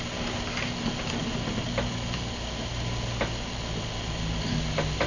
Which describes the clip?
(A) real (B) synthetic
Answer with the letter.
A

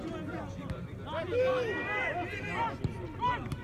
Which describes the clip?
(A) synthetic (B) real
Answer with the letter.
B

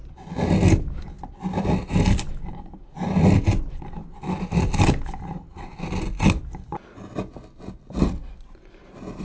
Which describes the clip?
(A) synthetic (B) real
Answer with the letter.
B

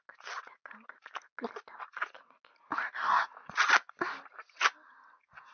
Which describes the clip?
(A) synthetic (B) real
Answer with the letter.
B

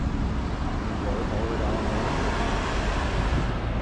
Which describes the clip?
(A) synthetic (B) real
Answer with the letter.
B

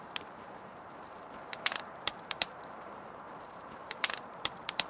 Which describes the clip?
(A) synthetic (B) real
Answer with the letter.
A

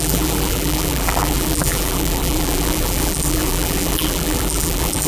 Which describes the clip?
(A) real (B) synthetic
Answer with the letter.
B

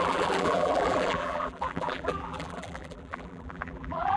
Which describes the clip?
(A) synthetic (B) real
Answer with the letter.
A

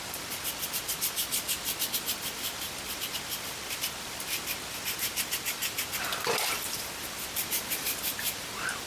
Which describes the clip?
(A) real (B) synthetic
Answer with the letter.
B